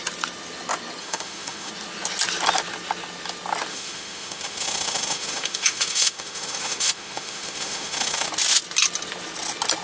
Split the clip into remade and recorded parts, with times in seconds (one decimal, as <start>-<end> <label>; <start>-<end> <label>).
0.0-1.0 recorded; 1.0-1.7 remade; 1.7-3.7 recorded; 3.7-8.3 remade; 8.3-9.8 recorded

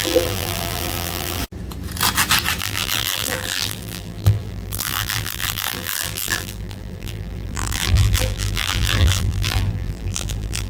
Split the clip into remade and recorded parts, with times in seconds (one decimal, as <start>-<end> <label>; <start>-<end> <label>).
0.0-1.4 remade; 1.4-2.6 recorded; 2.6-10.7 remade

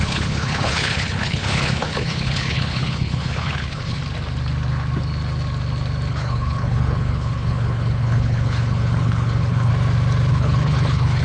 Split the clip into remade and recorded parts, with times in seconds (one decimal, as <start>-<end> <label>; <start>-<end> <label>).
0.0-4.0 remade; 4.0-6.1 recorded; 6.1-9.7 remade; 9.7-10.3 recorded; 10.3-11.2 remade